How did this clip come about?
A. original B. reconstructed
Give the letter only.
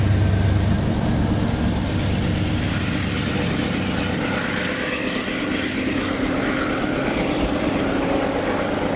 A